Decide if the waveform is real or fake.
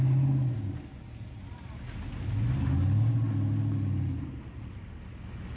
real